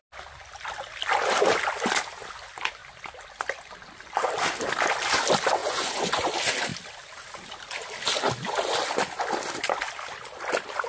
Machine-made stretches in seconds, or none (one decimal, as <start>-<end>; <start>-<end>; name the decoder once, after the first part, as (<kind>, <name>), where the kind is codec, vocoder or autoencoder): 5.6-6.3 (vocoder, Vocos)